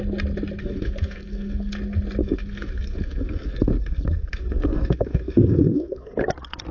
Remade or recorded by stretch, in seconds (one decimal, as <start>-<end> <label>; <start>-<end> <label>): 0.0-0.6 recorded; 0.6-1.7 remade; 1.7-2.2 recorded; 2.2-6.2 remade; 6.2-6.7 recorded

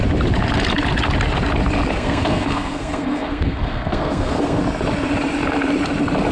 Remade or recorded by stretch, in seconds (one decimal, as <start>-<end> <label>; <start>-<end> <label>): 0.0-1.9 recorded; 1.9-4.6 remade; 4.6-6.3 recorded